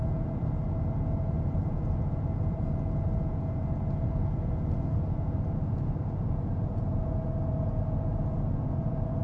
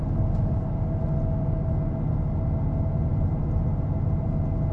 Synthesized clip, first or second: first